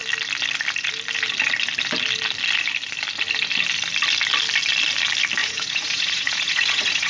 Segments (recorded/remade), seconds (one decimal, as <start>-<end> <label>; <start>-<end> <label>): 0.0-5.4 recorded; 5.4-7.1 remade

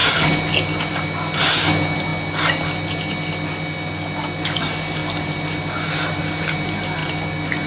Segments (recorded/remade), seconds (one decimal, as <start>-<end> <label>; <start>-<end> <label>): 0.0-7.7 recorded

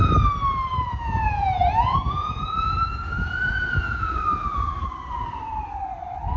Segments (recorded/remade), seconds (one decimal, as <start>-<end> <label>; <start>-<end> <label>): 0.0-0.8 recorded; 0.8-4.2 remade; 4.2-6.4 recorded

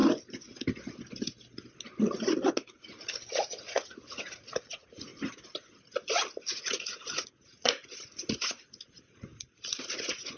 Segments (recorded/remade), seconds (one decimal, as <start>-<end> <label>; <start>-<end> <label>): 0.0-2.8 recorded; 2.8-5.1 remade; 5.1-6.5 recorded; 6.5-9.3 remade; 9.3-9.8 recorded; 9.8-10.4 remade